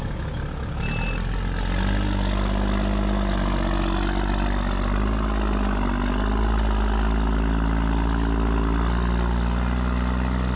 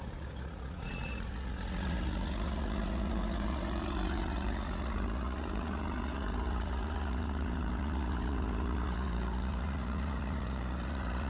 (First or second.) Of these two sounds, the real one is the first